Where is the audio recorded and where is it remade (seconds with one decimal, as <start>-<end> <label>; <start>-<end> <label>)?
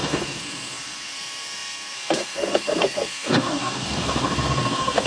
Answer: 0.0-5.1 remade